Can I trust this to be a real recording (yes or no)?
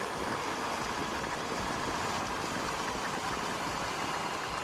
yes